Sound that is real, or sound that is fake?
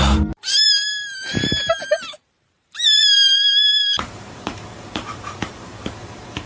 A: fake